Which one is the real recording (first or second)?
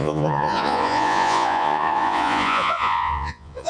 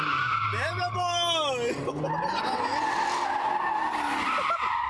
second